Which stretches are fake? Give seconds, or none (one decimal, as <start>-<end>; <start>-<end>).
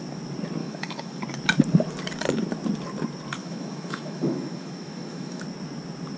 0.6-1.2; 3.4-5.4